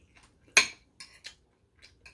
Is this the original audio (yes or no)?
yes